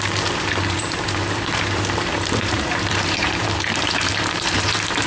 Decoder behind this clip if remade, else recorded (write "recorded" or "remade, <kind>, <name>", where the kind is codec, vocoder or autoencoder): remade, vocoder, BigVGAN v2